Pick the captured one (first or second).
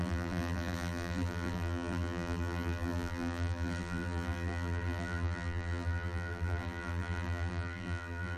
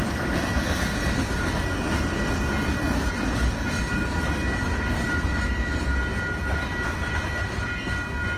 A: second